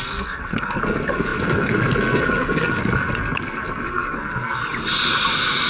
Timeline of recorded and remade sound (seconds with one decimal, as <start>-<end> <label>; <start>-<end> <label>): 0.0-4.6 remade; 4.6-5.7 recorded